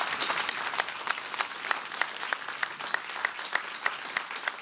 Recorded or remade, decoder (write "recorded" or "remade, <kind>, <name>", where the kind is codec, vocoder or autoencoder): recorded